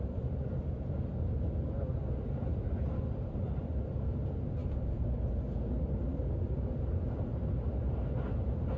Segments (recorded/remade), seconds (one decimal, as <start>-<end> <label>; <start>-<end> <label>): 0.0-8.8 recorded